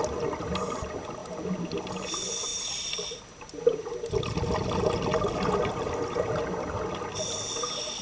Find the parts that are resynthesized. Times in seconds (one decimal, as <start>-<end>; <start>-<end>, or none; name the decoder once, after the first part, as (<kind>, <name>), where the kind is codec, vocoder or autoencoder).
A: none